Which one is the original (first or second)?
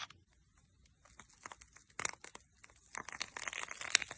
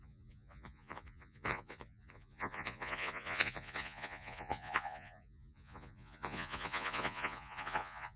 first